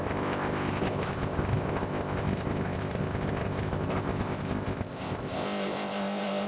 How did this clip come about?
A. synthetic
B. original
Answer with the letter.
A